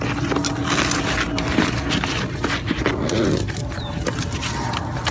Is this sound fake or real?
real